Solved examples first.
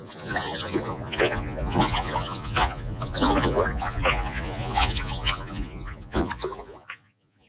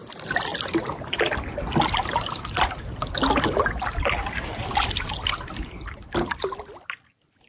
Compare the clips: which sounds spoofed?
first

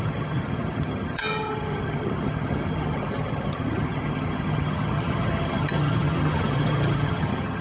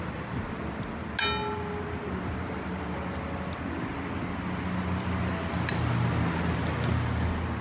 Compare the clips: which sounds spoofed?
first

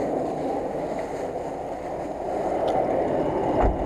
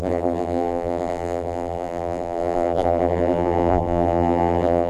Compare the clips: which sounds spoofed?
second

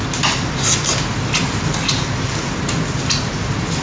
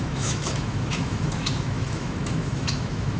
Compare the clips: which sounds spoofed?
second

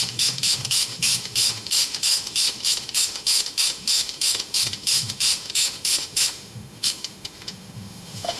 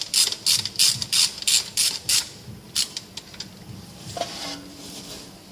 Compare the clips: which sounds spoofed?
first